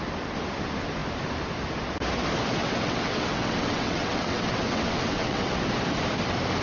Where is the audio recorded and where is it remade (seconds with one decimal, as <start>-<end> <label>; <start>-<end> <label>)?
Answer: 0.0-2.6 recorded; 2.6-5.6 remade; 5.6-6.6 recorded